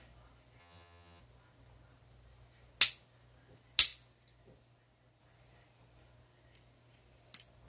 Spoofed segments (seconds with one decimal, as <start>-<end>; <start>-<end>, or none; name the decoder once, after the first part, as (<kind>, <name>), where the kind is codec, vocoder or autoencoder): 0.6-1.2 (vocoder, HiFi-GAN)